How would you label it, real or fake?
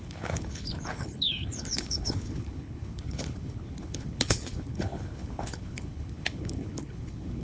fake